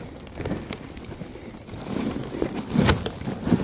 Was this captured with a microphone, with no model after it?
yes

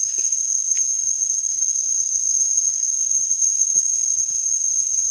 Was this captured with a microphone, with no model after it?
no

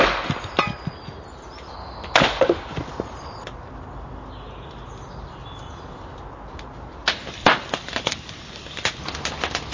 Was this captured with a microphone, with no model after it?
yes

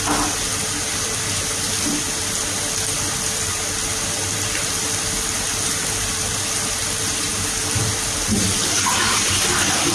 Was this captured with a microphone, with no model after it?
yes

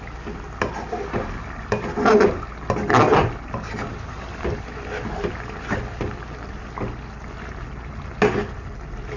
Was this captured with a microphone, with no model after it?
yes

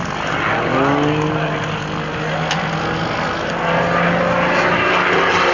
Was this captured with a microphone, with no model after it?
yes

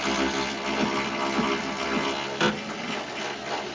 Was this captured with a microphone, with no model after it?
yes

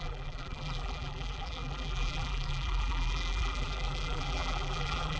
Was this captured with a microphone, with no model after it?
no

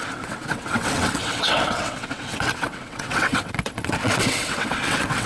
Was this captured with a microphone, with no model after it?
no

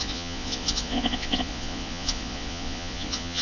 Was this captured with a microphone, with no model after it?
no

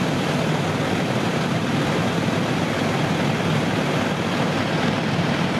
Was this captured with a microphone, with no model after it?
no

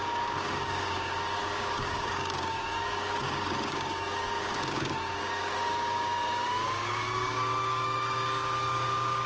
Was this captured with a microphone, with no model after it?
no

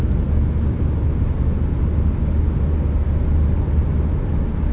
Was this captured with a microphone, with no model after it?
yes